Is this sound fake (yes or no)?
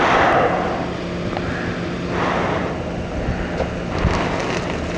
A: no